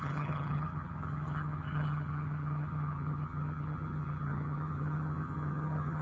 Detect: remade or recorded remade